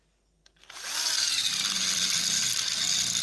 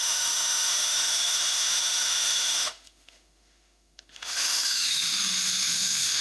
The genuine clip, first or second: first